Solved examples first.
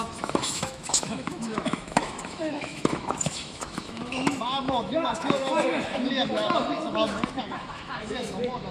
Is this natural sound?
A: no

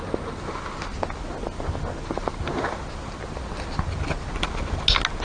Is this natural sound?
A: yes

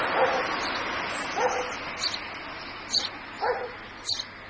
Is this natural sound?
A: yes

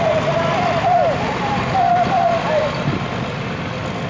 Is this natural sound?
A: yes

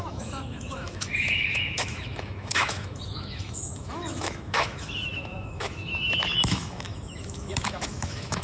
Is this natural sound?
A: no